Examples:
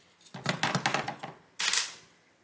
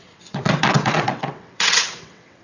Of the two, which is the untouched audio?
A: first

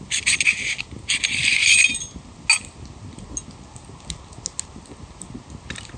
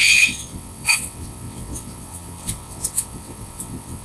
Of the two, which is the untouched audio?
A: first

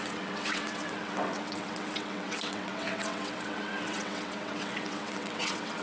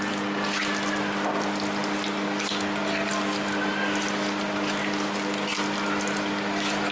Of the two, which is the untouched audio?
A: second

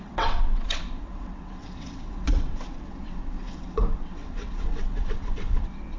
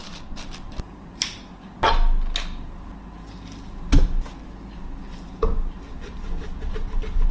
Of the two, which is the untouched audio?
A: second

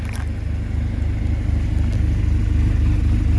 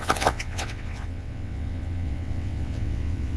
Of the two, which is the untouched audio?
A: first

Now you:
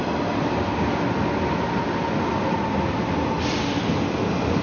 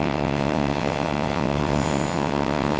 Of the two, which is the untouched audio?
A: first